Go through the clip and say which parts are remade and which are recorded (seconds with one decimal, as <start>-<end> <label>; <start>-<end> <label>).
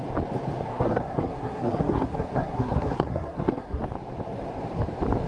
0.0-0.7 recorded; 0.7-3.8 remade; 3.8-5.3 recorded